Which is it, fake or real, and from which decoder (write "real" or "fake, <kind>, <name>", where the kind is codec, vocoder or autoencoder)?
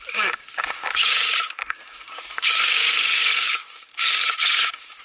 fake, codec, DAC